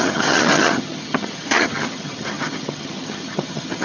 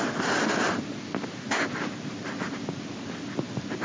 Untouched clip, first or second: second